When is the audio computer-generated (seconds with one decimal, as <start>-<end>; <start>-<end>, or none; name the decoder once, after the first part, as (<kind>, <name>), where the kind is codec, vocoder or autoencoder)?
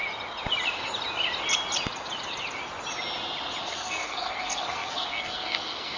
3.6-6.0 (codec, SNAC)